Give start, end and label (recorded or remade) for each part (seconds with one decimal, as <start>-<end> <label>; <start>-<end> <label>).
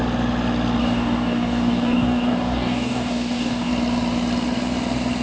0.0-0.8 recorded; 0.8-3.7 remade; 3.7-5.2 recorded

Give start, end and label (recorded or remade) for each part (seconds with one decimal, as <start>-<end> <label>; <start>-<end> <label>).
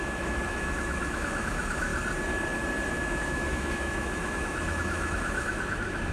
0.0-1.9 remade; 1.9-2.9 recorded; 2.9-6.1 remade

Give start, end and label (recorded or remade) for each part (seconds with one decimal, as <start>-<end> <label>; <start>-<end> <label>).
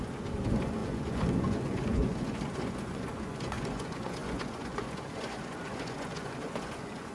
0.0-7.1 remade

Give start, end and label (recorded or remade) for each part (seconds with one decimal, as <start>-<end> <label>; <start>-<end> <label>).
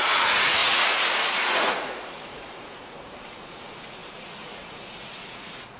0.0-5.8 remade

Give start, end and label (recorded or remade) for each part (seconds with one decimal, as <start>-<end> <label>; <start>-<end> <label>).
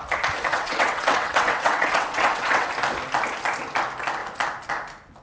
0.0-0.5 recorded; 0.5-2.7 remade; 2.7-5.2 recorded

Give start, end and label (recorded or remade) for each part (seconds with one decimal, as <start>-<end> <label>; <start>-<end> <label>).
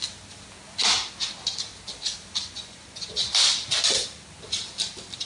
0.0-2.4 recorded; 2.4-3.3 remade; 3.3-5.3 recorded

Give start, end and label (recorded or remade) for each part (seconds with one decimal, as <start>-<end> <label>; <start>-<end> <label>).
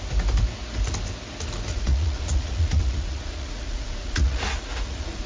0.0-1.7 recorded; 1.7-5.3 remade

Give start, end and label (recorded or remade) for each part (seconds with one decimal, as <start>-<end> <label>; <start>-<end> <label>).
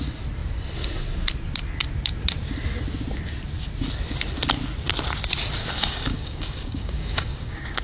0.0-5.6 recorded; 5.6-7.8 remade